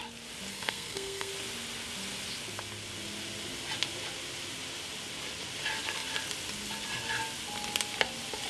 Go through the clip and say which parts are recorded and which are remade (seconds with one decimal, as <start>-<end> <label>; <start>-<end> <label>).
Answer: 0.0-0.5 recorded; 0.5-1.3 remade; 1.3-8.5 recorded